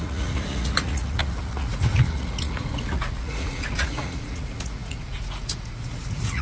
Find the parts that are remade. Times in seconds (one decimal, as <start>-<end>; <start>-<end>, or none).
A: 0.0-6.4